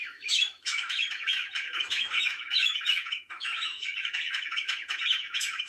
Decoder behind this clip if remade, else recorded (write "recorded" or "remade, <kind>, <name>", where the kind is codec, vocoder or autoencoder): remade, autoencoder, DAC-VAE